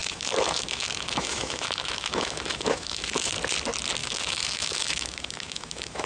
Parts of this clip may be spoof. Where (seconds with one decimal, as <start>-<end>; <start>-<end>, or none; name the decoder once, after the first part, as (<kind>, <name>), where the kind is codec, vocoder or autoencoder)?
0.0-3.3 (autoencoder, DAC-VAE); 4.0-6.1